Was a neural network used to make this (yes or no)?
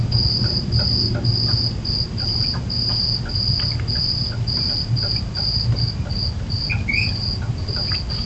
no